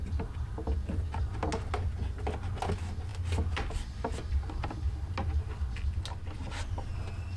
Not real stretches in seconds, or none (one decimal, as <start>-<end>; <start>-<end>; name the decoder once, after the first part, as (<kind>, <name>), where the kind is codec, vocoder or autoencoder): none